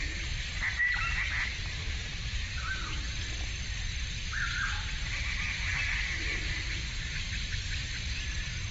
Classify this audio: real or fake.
real